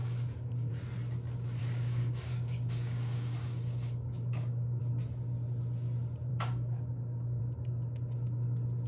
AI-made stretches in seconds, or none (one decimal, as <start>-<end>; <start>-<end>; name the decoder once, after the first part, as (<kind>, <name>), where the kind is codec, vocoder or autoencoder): 0.0-0.7 (codec, DAC); 1.6-4.8; 6.3-7.4